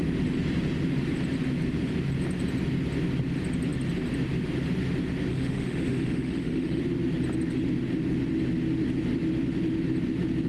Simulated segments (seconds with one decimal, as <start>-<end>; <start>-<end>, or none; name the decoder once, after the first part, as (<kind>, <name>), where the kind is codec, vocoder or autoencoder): 5.3-6.8 (autoencoder, DAC-VAE)